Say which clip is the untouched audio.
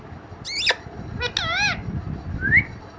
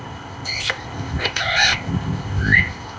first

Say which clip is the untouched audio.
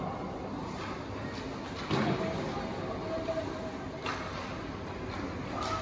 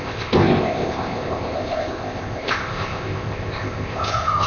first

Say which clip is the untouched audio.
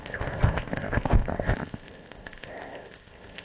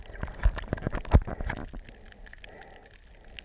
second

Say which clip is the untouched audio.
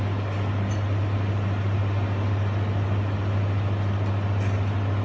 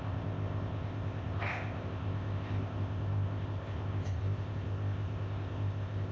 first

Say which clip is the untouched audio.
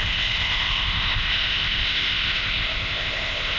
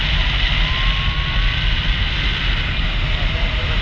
second